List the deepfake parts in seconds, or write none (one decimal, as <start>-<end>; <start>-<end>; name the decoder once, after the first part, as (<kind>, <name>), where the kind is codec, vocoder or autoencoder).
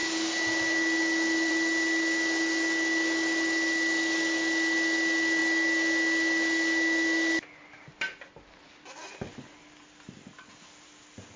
none